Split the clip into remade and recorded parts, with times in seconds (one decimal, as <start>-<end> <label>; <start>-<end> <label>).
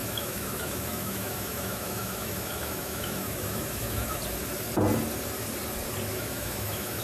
0.0-4.2 remade; 4.2-6.1 recorded; 6.1-7.0 remade